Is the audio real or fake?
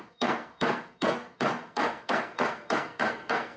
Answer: fake